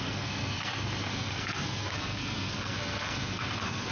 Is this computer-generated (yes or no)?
yes